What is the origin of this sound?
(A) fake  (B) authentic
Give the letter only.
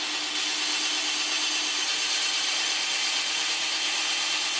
B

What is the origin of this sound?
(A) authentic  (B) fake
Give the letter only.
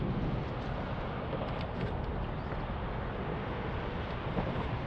A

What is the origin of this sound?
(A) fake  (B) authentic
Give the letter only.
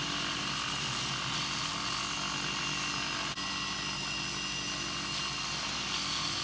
B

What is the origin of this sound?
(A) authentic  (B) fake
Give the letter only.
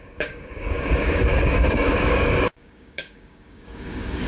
B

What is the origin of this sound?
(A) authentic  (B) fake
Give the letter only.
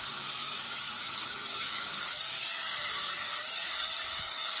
B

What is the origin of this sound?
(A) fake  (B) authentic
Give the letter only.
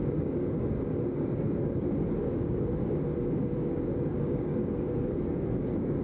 A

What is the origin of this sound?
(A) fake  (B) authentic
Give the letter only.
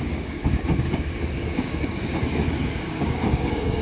A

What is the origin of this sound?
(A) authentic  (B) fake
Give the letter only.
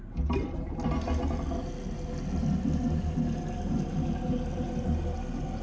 A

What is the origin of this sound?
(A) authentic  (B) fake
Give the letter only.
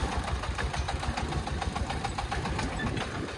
A